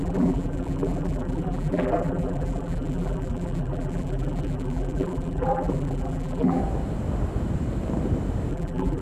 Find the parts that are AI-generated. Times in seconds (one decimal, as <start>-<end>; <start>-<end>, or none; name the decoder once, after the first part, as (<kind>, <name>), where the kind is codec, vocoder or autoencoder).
0.0-6.6 (vocoder, BigVGAN v2); 8.5-9.0